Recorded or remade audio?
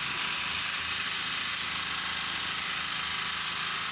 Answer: recorded